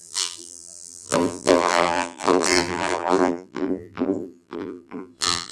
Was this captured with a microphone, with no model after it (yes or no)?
no